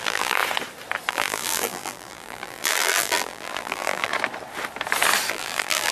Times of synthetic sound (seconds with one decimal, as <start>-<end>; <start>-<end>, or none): 0.0-0.4; 1.1-4.1; 5.3-5.9